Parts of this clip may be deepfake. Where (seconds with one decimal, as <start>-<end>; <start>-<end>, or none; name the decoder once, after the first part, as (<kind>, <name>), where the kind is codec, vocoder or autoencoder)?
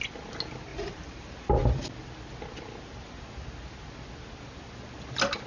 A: 0.7-1.9 (vocoder, BigVGAN v2)